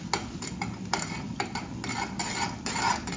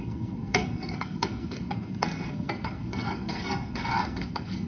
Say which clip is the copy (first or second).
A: second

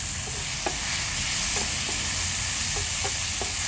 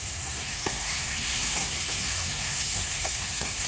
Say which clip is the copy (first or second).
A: second